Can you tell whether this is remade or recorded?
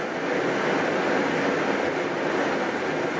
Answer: recorded